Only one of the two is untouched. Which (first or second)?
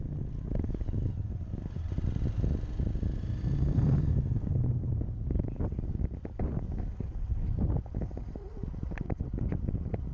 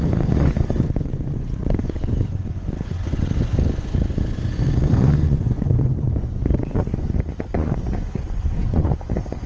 first